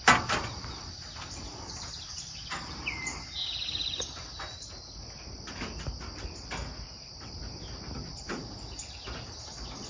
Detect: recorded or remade recorded